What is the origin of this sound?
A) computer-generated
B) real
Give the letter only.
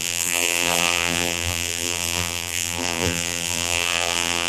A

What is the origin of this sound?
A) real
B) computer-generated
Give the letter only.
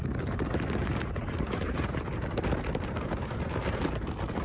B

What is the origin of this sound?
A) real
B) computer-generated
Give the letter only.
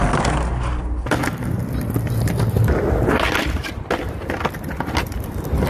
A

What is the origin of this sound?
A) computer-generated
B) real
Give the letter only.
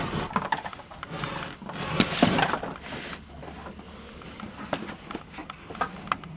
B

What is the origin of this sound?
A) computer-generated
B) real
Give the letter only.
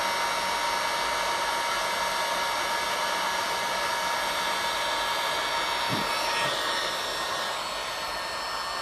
B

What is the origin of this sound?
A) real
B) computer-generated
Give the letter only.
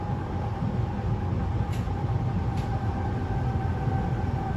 A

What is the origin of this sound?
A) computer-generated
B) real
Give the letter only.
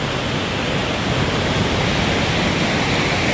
A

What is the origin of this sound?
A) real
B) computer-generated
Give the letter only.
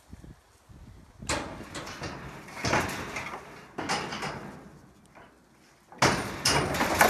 A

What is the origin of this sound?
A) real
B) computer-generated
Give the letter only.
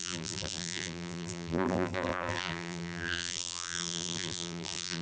B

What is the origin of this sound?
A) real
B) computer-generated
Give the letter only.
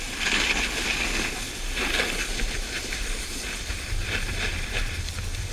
A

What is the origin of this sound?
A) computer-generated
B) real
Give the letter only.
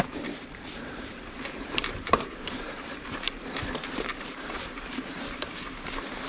A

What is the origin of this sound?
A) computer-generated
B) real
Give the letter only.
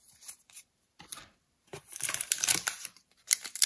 A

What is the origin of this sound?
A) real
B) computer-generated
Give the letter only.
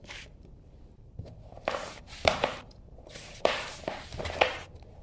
B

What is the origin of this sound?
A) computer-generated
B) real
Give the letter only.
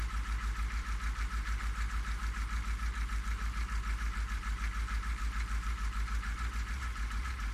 A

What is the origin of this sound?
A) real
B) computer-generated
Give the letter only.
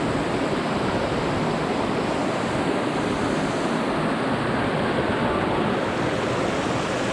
A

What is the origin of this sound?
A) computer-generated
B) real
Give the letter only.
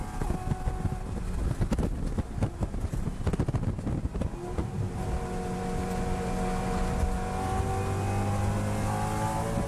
B